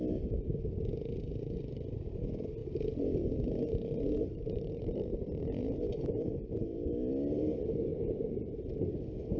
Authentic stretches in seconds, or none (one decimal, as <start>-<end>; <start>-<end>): 0.0-2.6; 6.9-7.9; 8.6-9.4

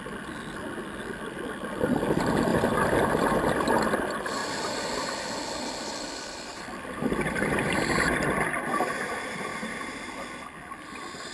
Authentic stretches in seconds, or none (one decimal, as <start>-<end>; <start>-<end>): 2.5-3.8; 4.4-5.4; 9.5-10.7